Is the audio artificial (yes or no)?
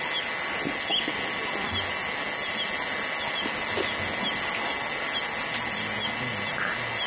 no